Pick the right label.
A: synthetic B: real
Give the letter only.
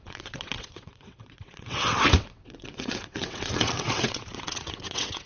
A